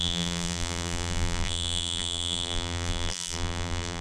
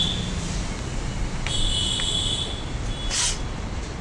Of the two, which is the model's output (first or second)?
first